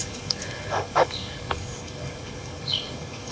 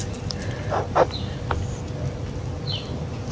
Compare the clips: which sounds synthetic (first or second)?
first